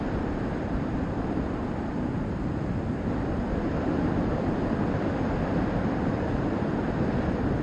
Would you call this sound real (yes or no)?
no